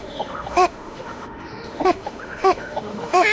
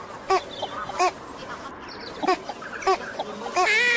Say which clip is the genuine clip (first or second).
second